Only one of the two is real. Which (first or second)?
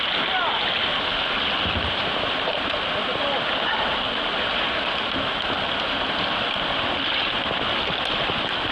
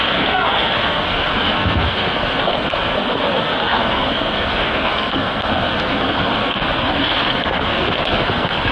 first